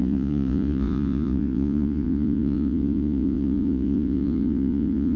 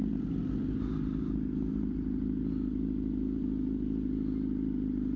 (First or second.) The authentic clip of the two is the second